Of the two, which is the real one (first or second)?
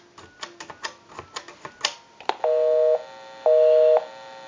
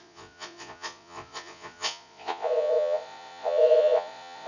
first